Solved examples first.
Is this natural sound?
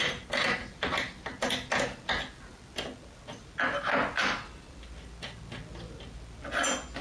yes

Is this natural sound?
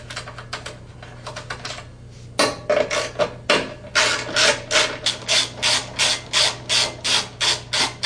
yes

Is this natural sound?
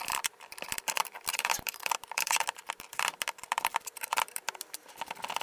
no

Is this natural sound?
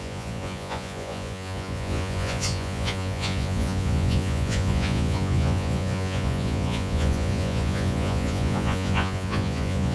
no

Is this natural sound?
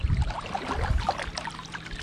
yes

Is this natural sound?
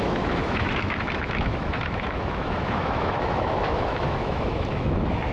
no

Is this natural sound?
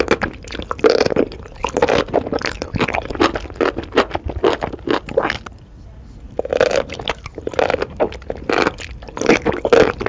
yes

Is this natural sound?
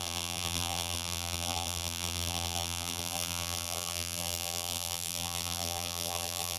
no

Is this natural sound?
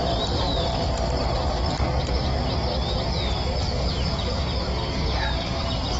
no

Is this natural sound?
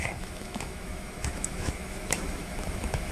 no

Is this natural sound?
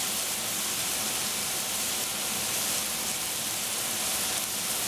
yes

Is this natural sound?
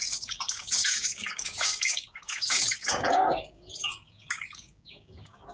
no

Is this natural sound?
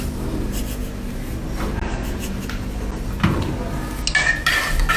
yes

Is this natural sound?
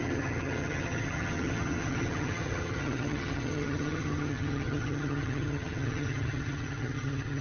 no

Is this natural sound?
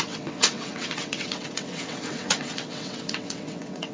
no